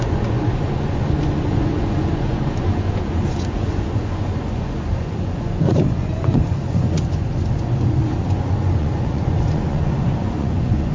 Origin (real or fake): fake